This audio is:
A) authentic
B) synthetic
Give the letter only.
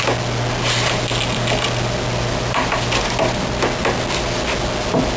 A